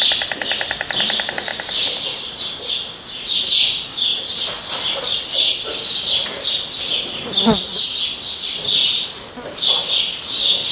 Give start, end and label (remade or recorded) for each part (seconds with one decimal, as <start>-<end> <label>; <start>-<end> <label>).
0.0-10.7 recorded